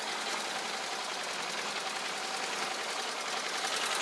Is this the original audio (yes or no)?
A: yes